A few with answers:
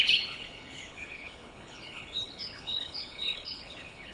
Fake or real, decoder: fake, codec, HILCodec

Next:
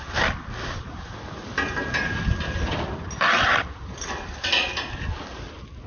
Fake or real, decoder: real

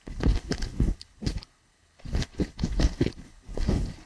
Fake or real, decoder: fake, codec, HILCodec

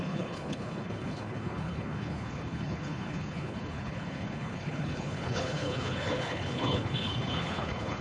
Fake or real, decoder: fake, codec, HILCodec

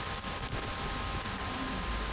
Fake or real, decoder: real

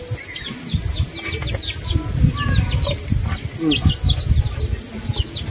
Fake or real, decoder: real